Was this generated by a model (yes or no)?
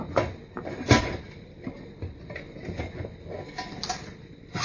no